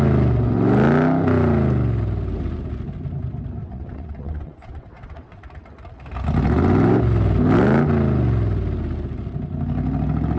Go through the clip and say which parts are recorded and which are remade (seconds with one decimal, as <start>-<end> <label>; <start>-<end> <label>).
0.0-3.6 recorded; 3.6-5.4 remade; 5.4-10.4 recorded